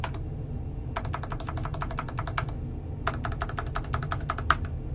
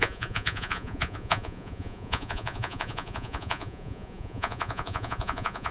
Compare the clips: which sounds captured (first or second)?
first